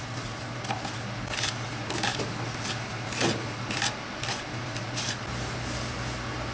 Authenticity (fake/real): real